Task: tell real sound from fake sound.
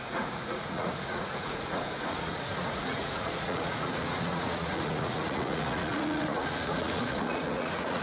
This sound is fake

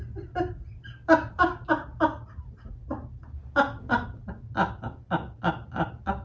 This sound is real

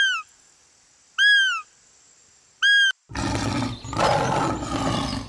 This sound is real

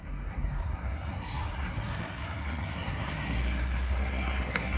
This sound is fake